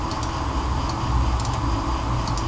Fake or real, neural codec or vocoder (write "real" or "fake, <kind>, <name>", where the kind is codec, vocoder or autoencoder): real